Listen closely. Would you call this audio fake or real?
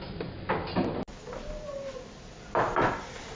real